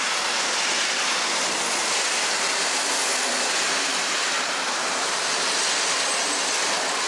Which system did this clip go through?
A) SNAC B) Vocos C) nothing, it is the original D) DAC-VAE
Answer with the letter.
C